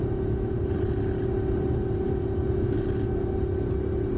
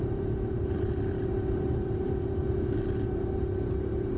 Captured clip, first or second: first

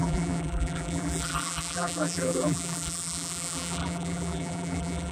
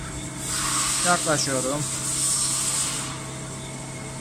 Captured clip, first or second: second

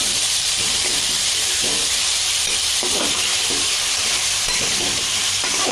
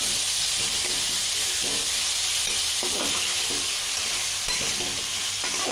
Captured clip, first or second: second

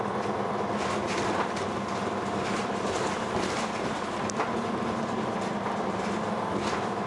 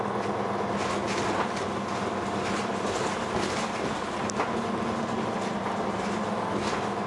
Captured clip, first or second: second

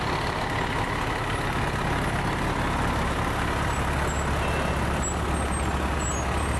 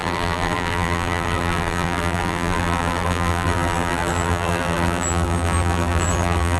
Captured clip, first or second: first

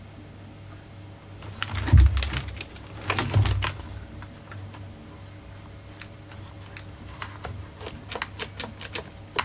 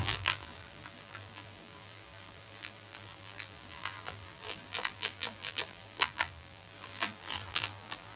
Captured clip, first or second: first